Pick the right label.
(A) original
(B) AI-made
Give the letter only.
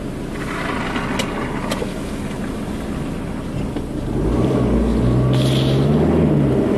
A